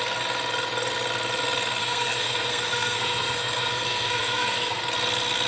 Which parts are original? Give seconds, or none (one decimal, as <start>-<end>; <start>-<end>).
0.0-1.8; 4.8-5.5